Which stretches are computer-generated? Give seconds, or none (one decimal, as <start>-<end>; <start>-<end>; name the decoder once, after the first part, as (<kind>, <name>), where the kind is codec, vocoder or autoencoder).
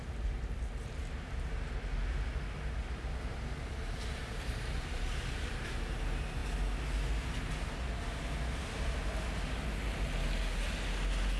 0.0-1.4 (vocoder, BigVGAN v2); 3.3-5.7